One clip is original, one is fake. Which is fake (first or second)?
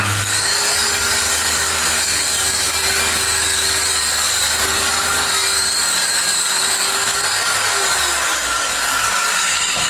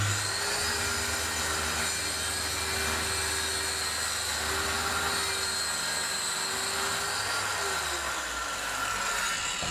first